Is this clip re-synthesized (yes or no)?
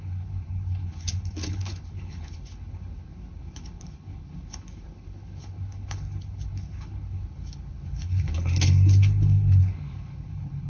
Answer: yes